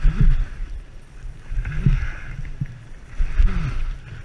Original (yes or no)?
yes